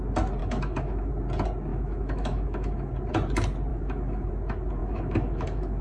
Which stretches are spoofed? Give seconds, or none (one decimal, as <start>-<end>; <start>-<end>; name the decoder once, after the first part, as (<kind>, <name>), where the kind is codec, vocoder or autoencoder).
0.4-1.1 (autoencoder, DAC-VAE); 1.7-2.9; 3.7-4.3; 4.8-5.8